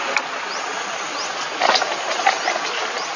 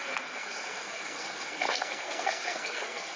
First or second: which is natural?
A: first